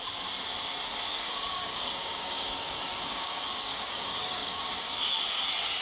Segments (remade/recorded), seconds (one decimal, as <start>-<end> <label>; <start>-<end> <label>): 0.0-1.1 recorded; 1.1-4.6 remade; 4.6-5.8 recorded